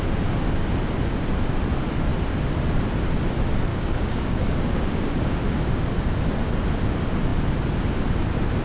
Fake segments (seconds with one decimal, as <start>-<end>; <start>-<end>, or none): 3.7-5.9